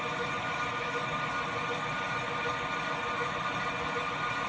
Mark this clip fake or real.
real